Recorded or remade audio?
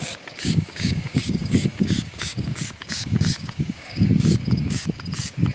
remade